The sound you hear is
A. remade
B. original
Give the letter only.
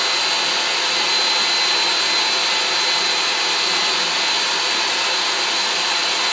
B